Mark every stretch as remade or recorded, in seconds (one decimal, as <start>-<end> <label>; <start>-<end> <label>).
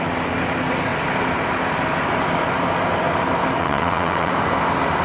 0.0-3.6 recorded; 3.6-4.3 remade; 4.3-5.0 recorded